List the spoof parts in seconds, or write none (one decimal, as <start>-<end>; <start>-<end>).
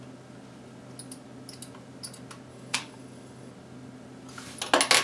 2.5-3.5